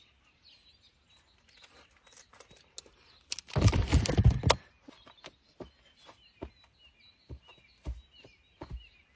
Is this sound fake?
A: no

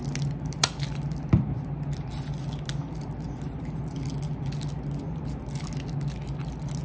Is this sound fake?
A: no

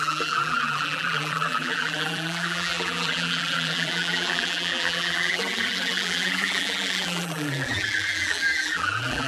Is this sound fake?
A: yes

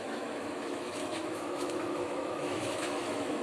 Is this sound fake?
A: yes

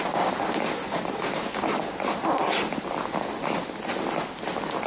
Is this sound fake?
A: no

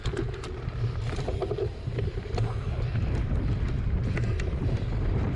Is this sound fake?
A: yes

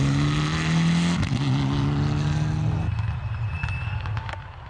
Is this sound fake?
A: no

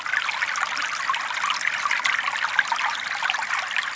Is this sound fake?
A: no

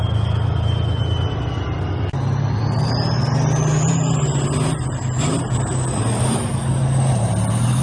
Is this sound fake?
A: no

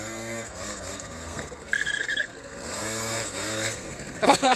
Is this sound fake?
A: yes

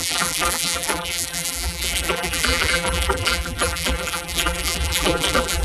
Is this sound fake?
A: yes